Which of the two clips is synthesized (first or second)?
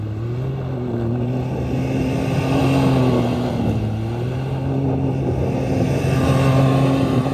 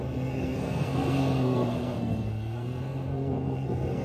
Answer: second